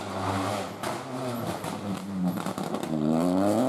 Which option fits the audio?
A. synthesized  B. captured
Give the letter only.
B